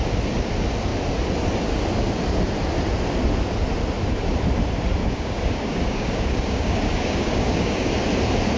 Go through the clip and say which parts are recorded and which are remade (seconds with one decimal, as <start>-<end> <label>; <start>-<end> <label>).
0.0-5.0 recorded; 5.0-7.9 remade; 7.9-8.6 recorded

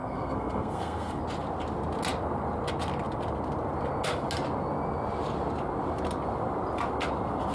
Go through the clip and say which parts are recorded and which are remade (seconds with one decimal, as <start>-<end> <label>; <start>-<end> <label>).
0.0-1.2 remade; 1.2-7.5 recorded

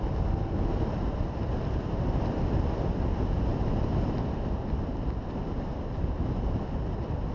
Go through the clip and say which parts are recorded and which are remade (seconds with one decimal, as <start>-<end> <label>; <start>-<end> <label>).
0.0-7.3 recorded

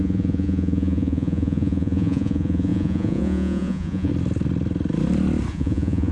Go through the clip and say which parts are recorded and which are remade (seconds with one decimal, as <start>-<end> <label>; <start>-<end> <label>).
0.0-4.1 remade; 4.1-5.5 recorded; 5.5-6.1 remade

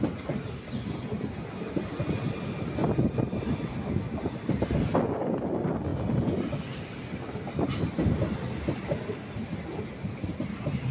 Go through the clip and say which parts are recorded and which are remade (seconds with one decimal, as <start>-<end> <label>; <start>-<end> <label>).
0.0-10.9 recorded

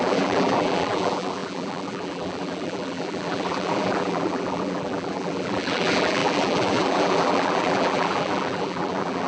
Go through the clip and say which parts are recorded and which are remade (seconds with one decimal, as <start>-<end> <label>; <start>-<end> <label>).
0.0-9.3 remade